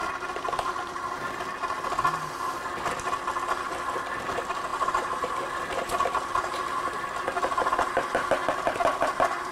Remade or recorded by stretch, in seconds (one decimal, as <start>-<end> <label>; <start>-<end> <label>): 0.0-4.7 recorded; 4.7-5.2 remade; 5.2-9.5 recorded